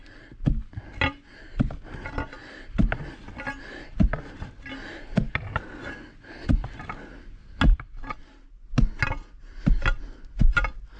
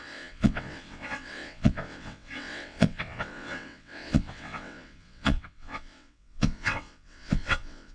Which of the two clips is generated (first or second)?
second